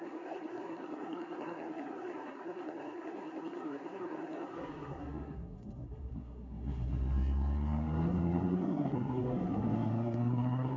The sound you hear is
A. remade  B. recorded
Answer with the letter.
A